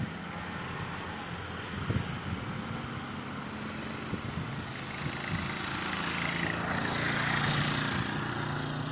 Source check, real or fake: real